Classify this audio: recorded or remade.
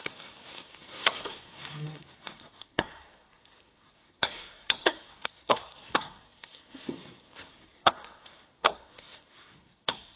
remade